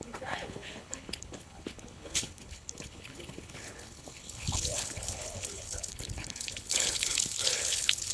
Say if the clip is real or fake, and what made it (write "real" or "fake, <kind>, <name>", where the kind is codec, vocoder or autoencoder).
fake, codec, HILCodec